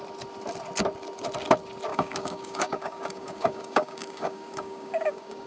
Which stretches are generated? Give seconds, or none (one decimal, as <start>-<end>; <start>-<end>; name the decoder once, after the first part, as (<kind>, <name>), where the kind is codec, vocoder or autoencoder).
1.9-5.5 (codec, DAC)